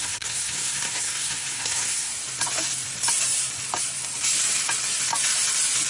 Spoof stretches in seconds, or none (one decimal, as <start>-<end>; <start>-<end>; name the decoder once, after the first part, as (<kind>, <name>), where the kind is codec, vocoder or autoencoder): 0.0-2.1 (codec, SNAC)